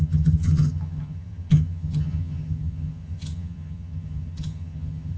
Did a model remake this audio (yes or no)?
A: yes